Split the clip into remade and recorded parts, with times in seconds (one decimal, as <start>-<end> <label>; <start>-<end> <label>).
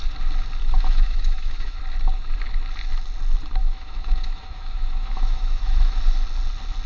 0.0-0.6 recorded; 0.6-1.8 remade; 1.8-3.6 recorded; 3.6-6.0 remade; 6.0-6.9 recorded